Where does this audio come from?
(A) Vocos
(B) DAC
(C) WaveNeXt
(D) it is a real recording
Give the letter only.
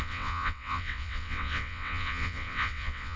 C